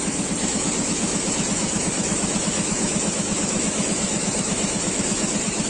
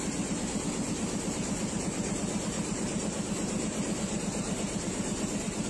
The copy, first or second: first